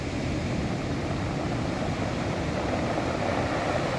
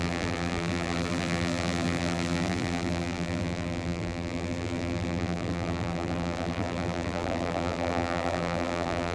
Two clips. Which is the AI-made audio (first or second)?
second